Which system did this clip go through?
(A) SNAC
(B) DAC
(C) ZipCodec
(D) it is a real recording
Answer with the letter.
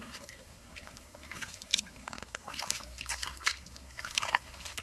A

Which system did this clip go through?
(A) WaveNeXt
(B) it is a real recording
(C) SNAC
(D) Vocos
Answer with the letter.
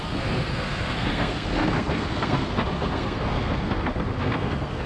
C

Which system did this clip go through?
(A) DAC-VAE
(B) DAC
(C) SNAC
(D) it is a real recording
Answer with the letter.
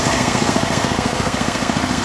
C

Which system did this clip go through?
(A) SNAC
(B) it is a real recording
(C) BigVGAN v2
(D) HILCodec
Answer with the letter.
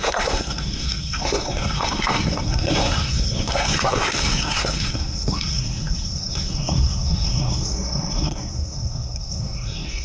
A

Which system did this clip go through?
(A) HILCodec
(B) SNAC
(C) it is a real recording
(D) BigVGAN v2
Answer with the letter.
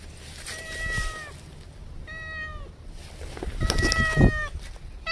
C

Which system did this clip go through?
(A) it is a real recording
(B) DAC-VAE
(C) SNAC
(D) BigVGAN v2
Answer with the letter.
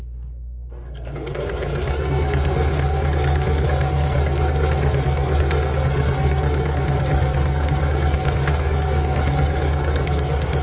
C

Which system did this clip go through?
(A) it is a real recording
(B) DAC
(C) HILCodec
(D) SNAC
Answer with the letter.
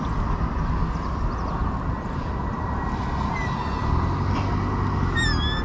A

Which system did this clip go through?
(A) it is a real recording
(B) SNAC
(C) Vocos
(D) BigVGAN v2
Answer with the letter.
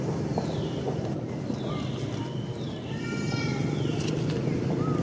A